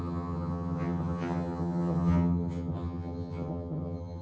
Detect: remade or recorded remade